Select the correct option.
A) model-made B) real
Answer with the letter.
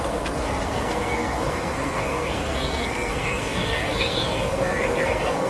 A